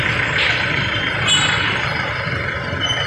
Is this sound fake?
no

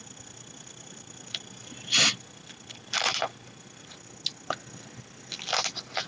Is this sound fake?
no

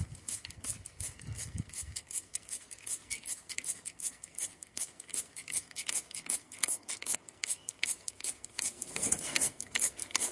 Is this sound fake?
yes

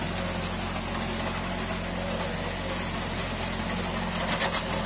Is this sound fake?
no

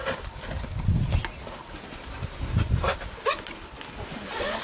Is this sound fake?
no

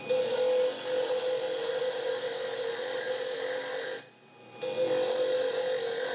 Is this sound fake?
no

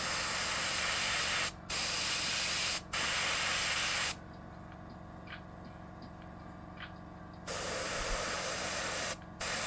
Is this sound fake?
no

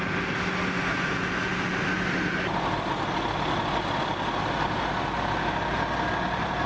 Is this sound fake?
no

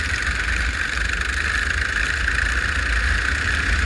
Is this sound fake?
no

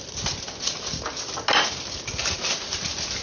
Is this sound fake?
no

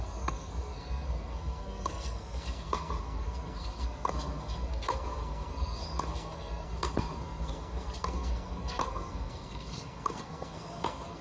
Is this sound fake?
yes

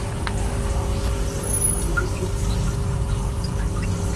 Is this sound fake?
no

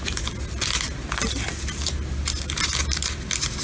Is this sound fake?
no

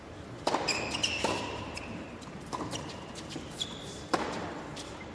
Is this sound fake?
yes